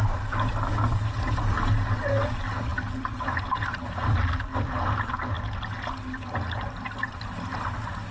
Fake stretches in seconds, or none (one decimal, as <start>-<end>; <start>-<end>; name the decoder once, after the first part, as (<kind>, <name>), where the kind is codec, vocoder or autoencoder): none